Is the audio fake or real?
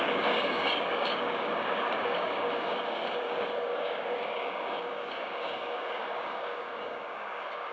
fake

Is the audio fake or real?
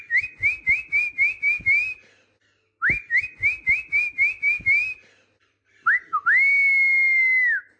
real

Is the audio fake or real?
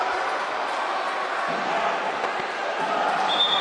real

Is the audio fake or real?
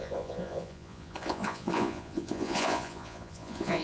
fake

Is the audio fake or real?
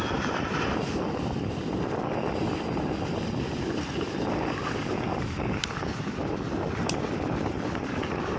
fake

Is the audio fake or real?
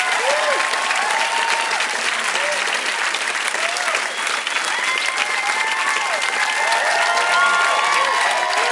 real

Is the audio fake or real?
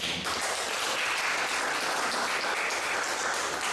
fake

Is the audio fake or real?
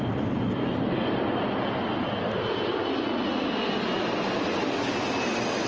real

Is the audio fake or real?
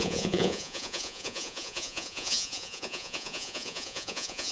fake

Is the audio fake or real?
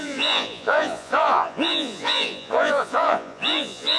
fake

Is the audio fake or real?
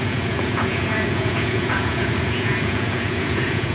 fake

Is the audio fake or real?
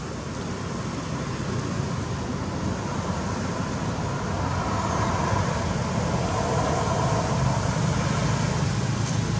real